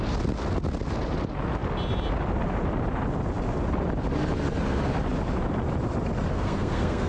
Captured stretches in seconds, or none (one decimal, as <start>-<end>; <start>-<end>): 0.0-6.3